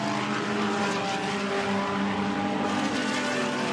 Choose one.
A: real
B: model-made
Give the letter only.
A